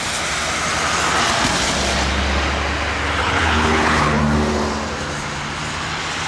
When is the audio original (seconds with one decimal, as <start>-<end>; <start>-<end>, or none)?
0.0-3.2; 4.2-6.3